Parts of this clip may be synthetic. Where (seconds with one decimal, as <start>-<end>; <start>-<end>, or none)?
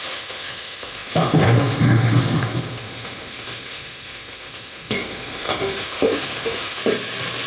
0.0-6.8